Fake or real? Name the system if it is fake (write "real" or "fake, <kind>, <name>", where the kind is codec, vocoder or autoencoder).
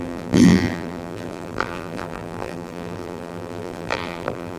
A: fake, vocoder, BigVGAN v2